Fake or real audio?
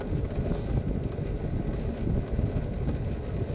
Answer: real